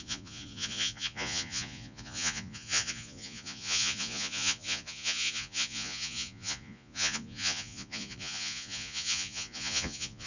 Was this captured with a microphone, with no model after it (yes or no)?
no